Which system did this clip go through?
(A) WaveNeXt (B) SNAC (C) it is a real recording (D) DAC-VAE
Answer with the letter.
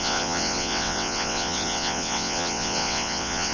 A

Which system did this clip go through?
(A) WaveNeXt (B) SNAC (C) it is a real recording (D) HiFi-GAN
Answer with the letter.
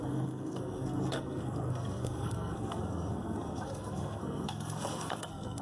B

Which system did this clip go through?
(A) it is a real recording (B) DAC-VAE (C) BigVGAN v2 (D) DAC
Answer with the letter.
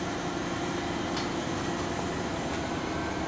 C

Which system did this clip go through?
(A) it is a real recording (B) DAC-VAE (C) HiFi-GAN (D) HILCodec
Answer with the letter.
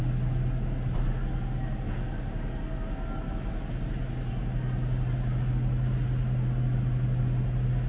A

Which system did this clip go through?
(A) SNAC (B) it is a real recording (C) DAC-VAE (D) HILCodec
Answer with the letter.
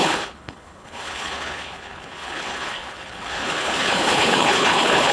D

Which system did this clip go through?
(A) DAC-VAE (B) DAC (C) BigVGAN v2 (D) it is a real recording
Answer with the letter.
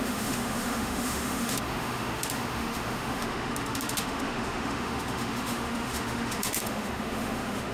A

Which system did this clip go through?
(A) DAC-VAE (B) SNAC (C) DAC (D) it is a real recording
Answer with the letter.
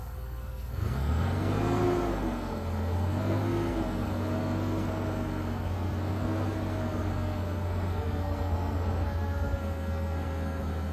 B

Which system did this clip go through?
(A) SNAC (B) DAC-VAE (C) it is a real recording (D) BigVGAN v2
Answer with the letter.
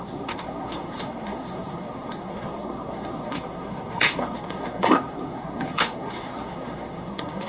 A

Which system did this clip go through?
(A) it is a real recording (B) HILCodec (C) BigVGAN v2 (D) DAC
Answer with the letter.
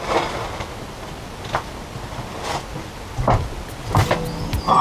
A